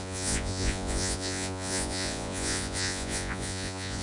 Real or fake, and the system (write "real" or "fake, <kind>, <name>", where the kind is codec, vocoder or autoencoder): fake, vocoder, Vocos